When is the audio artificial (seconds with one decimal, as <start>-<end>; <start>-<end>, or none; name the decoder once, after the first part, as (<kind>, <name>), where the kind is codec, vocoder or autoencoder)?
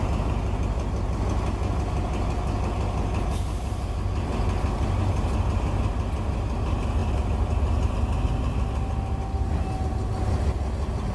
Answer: none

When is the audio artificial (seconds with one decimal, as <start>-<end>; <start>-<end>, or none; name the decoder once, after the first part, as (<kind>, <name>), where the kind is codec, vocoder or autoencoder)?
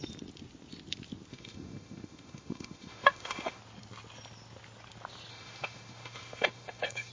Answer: 1.3-3.6 (autoencoder, DAC-VAE); 5.3-7.1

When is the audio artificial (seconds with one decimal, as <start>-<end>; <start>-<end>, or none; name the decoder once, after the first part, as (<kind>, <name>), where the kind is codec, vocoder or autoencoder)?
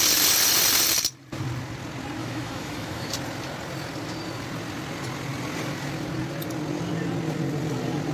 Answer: 2.2-3.1 (autoencoder, DAC-VAE)